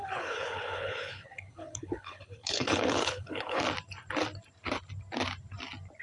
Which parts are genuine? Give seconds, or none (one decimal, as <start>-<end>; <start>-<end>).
3.6-6.0